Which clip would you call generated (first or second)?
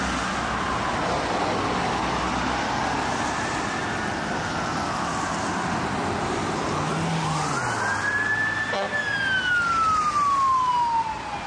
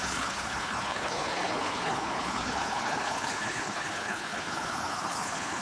second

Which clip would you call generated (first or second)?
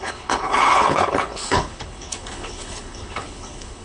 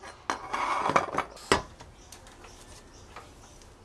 first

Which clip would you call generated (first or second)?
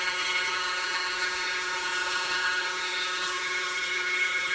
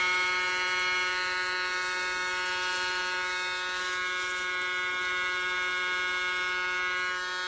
first